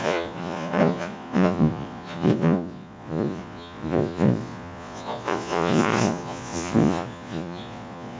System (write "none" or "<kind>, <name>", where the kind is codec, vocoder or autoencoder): vocoder, Vocos